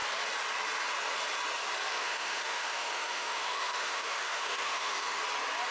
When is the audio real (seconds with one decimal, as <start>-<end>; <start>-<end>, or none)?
0.0-1.9; 5.2-5.7